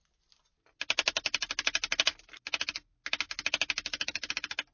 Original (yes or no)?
yes